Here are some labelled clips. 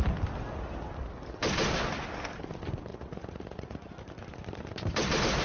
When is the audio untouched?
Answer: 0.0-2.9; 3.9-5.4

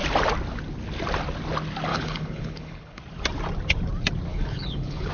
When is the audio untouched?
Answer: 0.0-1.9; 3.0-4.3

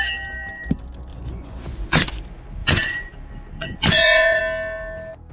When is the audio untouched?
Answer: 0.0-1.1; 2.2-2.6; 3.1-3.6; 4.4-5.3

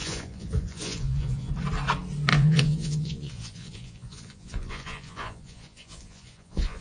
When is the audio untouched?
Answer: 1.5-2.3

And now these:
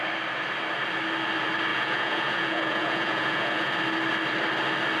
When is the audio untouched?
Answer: 0.0-1.7; 3.7-5.0

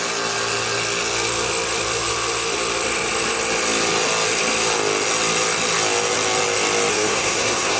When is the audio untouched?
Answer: 0.0-6.9

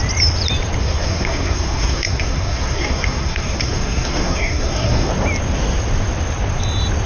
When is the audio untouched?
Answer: 0.0-0.8; 5.1-7.1

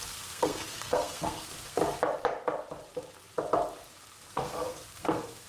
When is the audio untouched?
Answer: 1.8-4.3